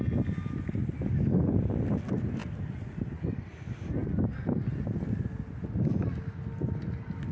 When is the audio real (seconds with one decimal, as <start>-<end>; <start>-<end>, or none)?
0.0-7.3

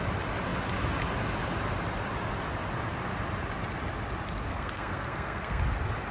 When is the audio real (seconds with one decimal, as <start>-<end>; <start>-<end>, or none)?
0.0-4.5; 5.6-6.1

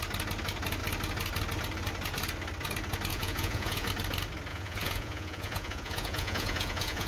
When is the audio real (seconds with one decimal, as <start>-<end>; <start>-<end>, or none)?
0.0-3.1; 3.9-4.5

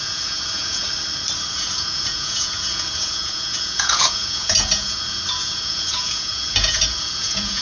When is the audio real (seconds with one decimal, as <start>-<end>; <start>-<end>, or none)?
0.8-1.5